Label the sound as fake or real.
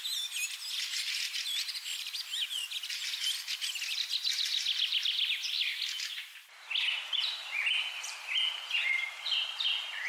fake